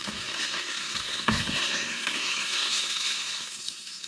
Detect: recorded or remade remade